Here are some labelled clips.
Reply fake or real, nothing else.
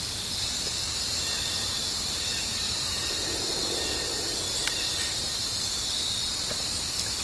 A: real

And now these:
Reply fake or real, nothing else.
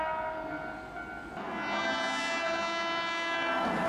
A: real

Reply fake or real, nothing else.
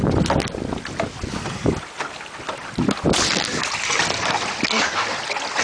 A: real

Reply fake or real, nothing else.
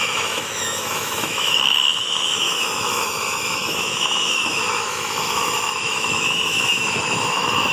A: fake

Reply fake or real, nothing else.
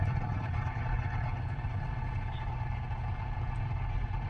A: real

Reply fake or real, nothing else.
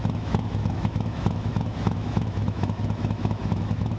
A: fake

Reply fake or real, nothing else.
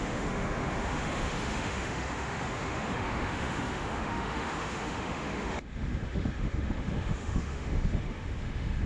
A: fake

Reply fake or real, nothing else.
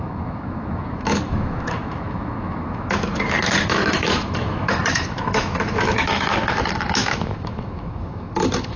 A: fake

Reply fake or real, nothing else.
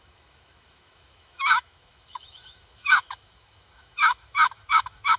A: fake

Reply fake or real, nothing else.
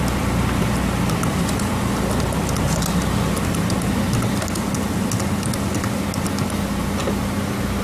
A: real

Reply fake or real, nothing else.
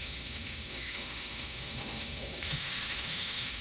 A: fake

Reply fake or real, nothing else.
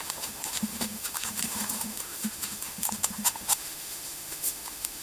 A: fake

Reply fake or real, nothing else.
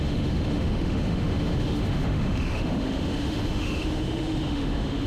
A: fake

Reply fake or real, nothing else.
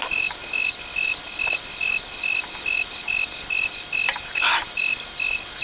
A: real